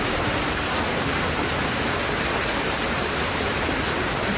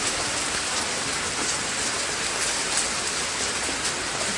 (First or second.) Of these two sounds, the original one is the second